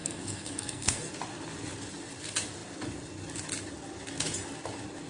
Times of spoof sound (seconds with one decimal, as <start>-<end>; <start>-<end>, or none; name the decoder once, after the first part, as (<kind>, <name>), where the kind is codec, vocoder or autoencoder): 0.0-1.1 (codec, SNAC)